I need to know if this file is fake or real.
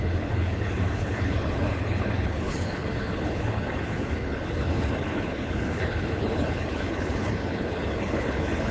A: fake